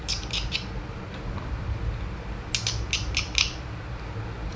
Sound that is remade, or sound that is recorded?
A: recorded